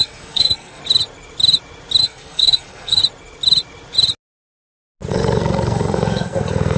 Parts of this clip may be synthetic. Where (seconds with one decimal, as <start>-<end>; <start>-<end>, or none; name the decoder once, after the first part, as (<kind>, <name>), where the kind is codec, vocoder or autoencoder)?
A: 0.0-0.8 (codec, SNAC); 2.0-3.0; 5.1-6.8